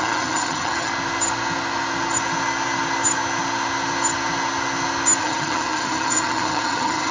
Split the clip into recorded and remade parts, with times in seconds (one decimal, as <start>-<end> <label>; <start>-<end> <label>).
0.0-0.9 remade; 0.9-5.2 recorded; 5.2-7.1 remade